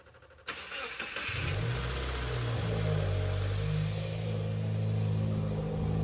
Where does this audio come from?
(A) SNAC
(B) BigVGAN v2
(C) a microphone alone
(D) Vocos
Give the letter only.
C